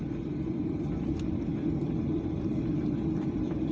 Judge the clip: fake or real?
fake